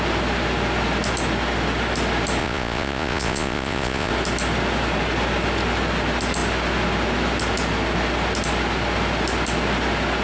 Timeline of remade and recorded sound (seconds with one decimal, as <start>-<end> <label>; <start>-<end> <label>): 0.0-2.4 recorded; 2.4-4.1 remade; 4.1-10.2 recorded

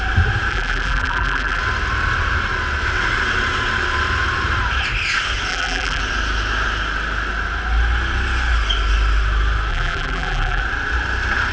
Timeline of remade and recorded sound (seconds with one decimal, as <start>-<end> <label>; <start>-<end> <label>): 0.0-0.5 recorded; 0.5-1.6 remade; 1.6-5.5 recorded; 5.5-6.0 remade; 6.0-9.7 recorded; 9.7-10.6 remade; 10.6-11.5 recorded

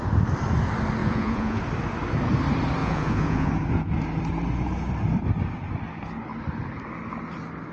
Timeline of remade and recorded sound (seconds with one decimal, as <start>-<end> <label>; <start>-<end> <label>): 0.0-1.0 recorded; 1.0-1.6 remade; 1.6-2.8 recorded; 2.8-3.5 remade; 3.5-7.7 recorded

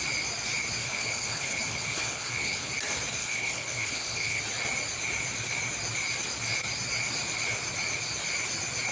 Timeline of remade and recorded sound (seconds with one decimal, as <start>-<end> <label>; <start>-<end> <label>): 0.0-0.8 recorded; 0.8-2.7 remade; 2.7-3.2 recorded; 3.2-4.4 remade; 4.4-8.9 recorded

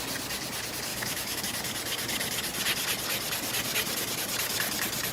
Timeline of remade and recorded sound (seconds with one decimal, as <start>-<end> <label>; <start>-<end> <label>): 0.0-0.9 recorded; 0.9-1.4 remade; 1.4-5.1 recorded